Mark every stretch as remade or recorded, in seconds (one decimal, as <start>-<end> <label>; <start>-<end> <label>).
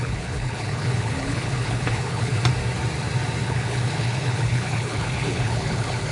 0.0-2.3 remade; 2.3-3.4 recorded; 3.4-6.1 remade